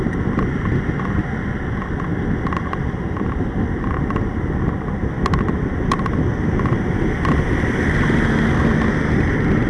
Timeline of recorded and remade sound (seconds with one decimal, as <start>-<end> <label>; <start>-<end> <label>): 0.0-9.7 recorded